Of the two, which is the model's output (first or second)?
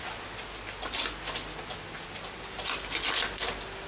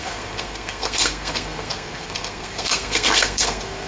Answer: second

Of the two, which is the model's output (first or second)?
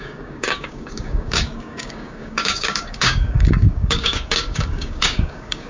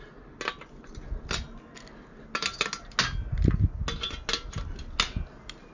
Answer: first